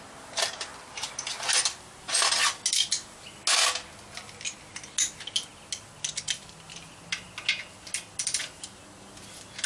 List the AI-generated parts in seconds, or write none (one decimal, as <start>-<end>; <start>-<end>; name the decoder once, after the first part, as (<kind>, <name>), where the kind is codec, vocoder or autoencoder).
0.7-2.3 (vocoder, BigVGAN v2)